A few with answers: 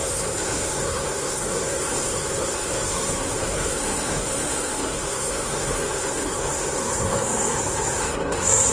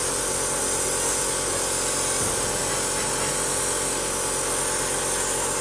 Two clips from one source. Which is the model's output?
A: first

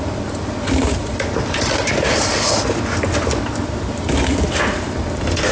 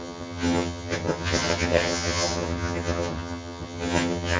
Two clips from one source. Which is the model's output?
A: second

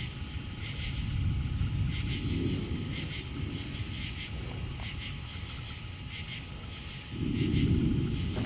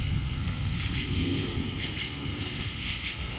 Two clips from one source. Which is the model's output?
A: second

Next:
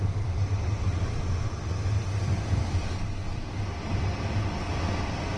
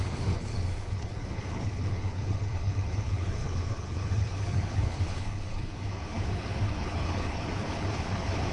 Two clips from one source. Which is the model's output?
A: second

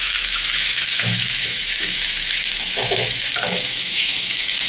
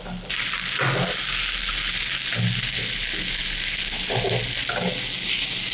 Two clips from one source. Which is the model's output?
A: first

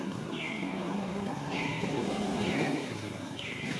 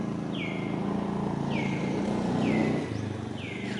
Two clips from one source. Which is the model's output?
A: first